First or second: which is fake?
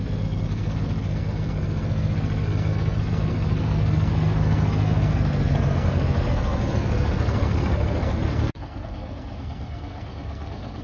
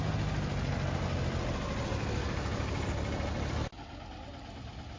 first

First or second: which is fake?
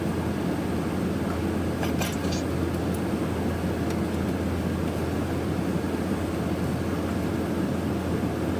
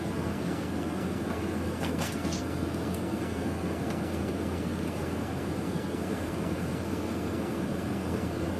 second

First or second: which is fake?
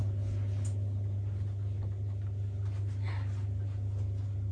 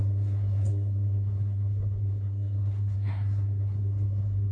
second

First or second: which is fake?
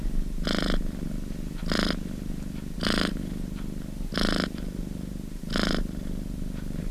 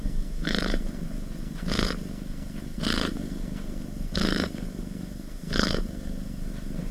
second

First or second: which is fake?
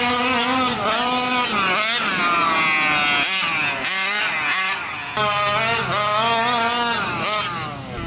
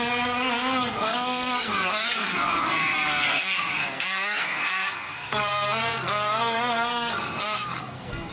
second